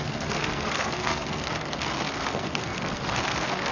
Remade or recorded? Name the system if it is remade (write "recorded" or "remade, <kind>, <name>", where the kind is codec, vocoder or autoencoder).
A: remade, codec, SNAC